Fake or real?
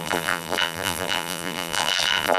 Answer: fake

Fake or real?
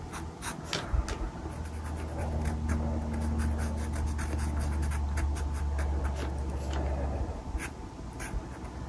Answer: real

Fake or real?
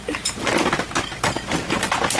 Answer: real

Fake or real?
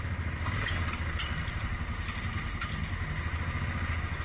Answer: real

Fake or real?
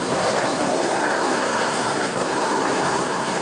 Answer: fake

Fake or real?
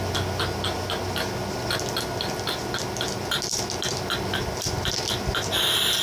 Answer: real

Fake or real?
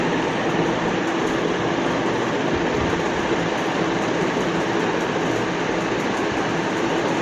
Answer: real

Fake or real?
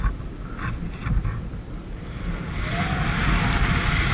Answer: real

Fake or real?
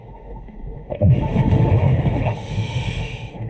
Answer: fake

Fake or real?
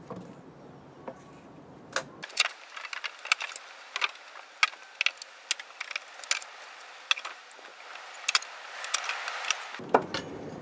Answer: real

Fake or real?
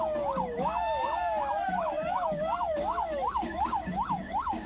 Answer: fake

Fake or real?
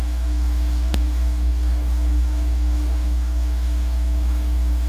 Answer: fake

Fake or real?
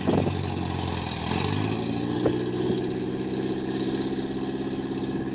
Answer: real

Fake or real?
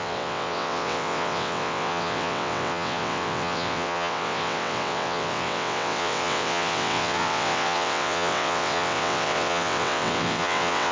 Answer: fake